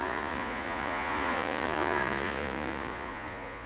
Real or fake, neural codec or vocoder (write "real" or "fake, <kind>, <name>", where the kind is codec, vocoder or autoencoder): fake, vocoder, Vocos